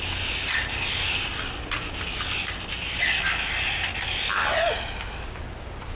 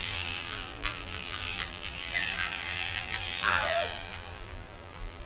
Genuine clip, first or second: first